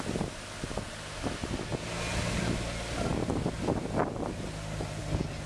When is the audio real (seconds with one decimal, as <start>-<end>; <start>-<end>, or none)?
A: 0.0-5.5

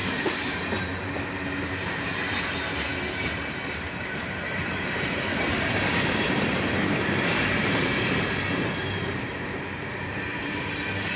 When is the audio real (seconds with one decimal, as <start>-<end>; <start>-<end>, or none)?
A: none